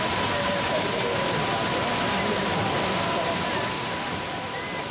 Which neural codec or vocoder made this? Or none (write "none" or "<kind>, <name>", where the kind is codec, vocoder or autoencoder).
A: vocoder, BigVGAN v2